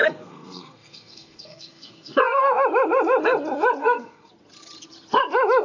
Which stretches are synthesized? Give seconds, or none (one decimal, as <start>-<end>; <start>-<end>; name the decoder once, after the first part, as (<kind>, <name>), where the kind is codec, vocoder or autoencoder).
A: 0.0-2.4 (codec, SNAC); 3.8-4.3